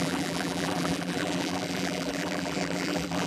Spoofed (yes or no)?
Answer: yes